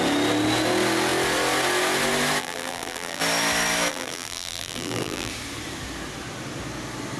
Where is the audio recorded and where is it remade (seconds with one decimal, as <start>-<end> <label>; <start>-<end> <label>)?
0.0-2.4 recorded; 2.4-3.2 remade; 3.2-3.9 recorded; 3.9-5.3 remade; 5.3-7.2 recorded